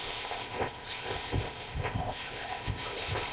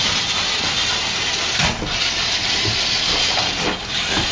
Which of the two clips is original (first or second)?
second